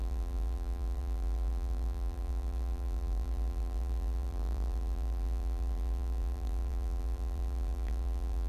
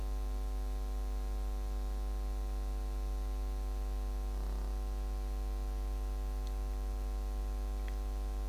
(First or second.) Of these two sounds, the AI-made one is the first